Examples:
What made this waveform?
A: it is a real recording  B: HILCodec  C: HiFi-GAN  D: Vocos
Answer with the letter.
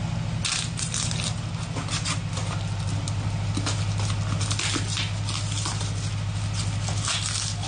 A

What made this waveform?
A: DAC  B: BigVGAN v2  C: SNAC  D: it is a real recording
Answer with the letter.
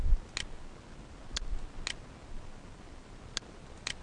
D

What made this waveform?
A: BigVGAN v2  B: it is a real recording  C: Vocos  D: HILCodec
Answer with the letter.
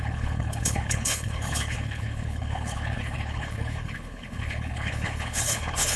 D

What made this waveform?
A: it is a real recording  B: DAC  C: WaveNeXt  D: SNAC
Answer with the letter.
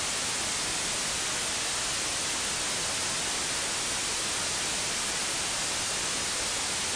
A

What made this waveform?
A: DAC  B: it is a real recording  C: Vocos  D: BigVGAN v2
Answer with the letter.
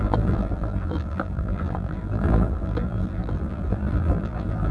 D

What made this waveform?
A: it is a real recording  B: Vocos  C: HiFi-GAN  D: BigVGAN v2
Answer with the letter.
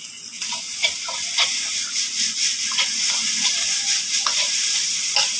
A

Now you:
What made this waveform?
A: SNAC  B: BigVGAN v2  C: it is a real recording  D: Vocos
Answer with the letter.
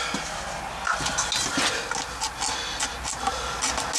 C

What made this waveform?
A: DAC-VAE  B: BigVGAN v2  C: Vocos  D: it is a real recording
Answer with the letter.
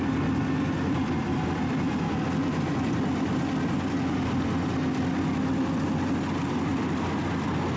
D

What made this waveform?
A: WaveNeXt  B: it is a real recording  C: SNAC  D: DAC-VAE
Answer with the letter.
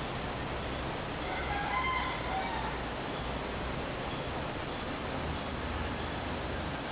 B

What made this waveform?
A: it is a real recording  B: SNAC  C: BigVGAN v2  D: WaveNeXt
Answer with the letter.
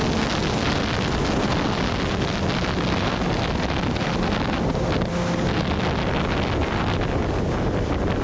A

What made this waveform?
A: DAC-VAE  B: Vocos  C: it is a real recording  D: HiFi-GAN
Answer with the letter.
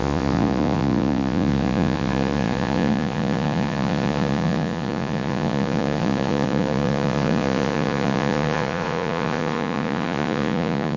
B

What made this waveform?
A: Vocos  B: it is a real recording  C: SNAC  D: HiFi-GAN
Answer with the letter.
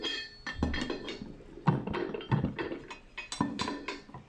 B